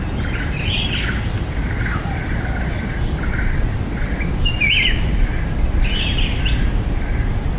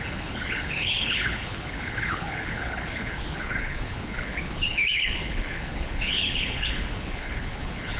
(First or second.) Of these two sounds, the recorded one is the first